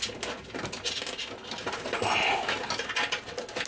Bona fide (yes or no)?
yes